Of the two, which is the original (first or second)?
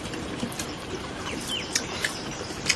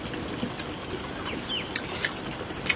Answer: second